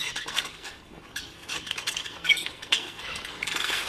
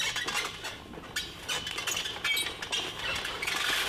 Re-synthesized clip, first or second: first